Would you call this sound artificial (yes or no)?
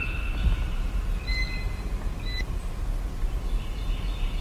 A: no